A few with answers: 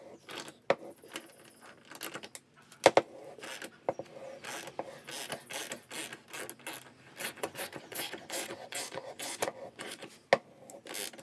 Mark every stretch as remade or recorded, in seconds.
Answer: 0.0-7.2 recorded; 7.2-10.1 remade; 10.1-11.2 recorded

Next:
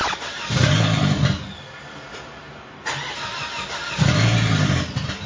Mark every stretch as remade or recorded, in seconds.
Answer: 0.0-5.3 recorded

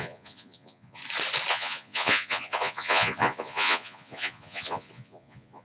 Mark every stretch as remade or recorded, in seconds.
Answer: 0.0-1.0 remade; 1.0-1.5 recorded; 1.5-5.6 remade

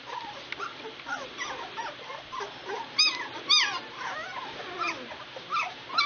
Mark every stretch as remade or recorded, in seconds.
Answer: 0.0-6.1 recorded

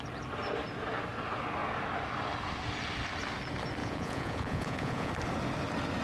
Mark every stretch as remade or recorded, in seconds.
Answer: 0.0-3.8 recorded; 3.8-5.1 remade; 5.1-6.0 recorded